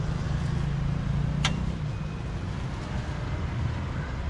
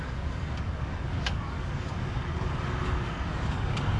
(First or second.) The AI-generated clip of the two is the second